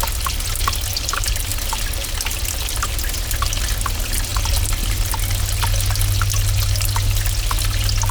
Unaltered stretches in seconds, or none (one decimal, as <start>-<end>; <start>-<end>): 0.0-8.1